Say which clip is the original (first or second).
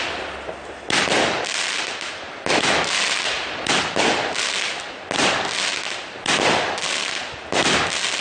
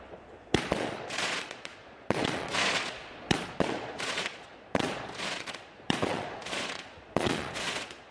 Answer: first